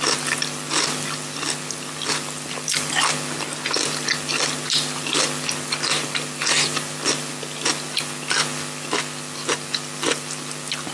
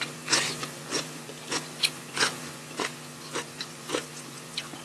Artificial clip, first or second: second